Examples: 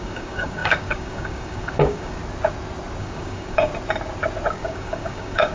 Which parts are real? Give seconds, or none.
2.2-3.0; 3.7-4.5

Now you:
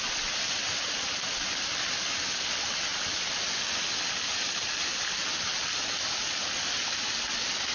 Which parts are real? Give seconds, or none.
0.0-7.7

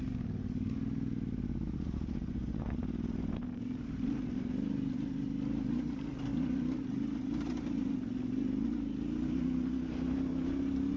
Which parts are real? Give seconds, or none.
0.0-2.2; 2.8-11.0

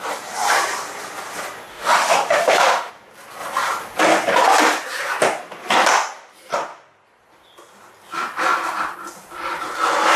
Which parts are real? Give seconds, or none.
0.0-1.7; 2.9-10.2